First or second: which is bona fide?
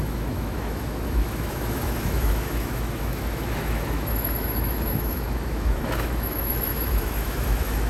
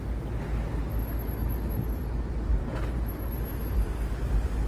second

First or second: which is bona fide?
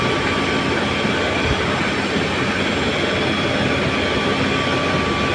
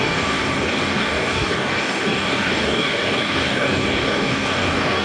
first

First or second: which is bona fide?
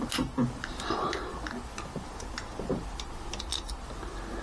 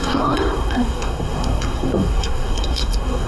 first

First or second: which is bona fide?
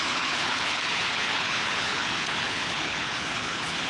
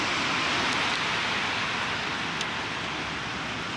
second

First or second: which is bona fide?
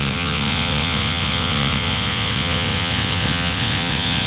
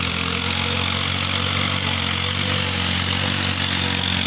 second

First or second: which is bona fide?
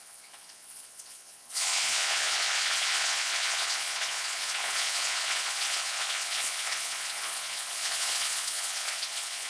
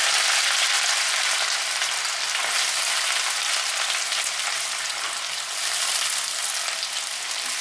second